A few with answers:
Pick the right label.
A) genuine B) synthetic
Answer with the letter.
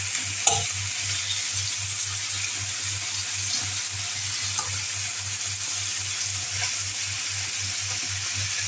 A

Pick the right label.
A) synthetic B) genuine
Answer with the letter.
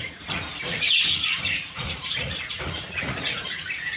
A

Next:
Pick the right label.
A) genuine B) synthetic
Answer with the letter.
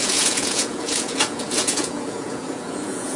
B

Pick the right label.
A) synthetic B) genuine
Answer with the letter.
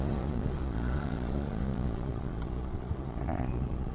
A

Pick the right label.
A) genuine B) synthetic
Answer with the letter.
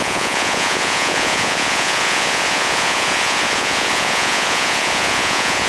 B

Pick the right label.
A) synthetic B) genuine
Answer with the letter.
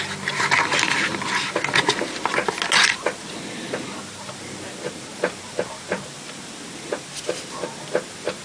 B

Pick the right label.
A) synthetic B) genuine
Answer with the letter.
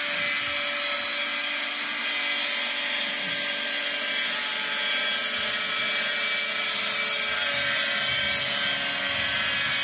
B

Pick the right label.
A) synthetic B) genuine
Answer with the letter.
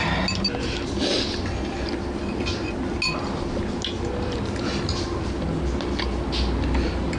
B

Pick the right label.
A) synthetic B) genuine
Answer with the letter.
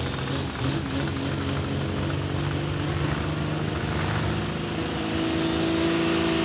B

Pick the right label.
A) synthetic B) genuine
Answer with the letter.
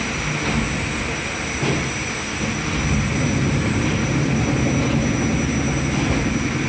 B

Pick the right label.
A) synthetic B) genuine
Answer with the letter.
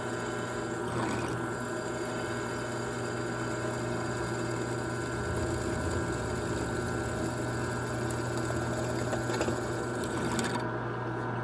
B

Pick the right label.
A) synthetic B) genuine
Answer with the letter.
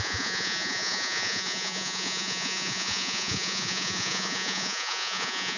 A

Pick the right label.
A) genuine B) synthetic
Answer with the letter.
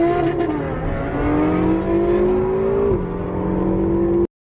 A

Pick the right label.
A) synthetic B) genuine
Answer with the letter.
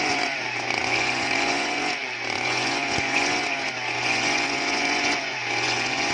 A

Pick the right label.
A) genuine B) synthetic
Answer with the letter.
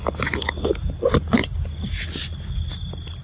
A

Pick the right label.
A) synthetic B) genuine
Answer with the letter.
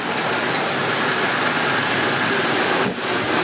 B